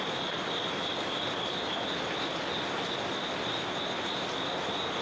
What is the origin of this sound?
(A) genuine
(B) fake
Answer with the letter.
A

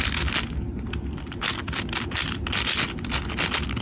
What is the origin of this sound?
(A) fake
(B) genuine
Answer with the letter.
B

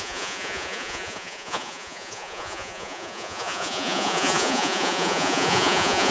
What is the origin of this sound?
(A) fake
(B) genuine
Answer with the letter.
A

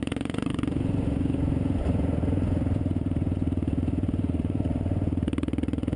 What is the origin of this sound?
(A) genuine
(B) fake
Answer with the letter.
B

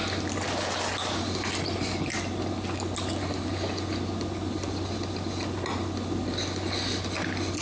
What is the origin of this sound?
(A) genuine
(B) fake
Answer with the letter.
A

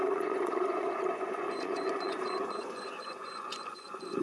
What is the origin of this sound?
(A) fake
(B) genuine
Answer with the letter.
A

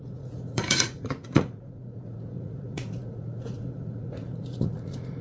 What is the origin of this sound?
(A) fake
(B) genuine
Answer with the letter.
A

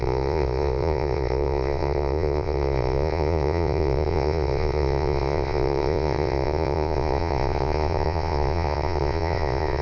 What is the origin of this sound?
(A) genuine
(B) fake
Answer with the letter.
B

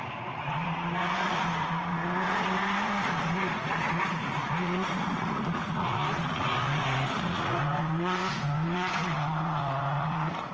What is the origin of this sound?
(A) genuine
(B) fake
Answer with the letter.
B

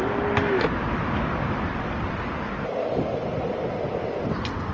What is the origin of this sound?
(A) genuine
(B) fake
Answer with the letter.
A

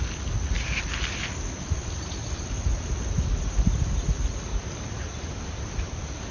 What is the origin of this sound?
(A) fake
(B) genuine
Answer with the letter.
B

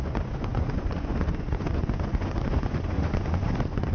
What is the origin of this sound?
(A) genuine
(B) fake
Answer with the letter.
B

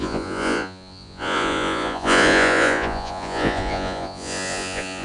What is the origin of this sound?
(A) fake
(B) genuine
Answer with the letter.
A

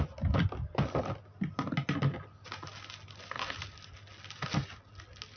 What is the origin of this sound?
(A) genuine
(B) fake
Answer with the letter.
A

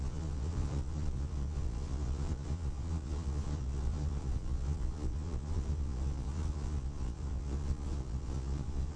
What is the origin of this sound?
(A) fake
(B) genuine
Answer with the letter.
A